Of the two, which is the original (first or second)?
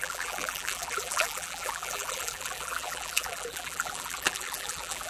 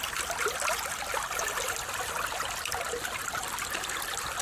second